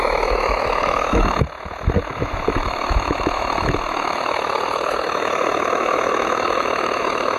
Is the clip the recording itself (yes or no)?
no